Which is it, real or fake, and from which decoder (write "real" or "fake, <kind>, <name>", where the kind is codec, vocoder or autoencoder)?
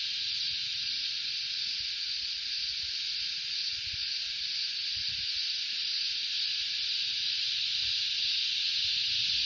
real